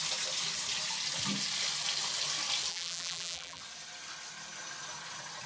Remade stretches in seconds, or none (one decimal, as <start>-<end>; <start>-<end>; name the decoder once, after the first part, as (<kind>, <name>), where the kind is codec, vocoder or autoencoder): 2.7-3.6 (vocoder, BigVGAN v2)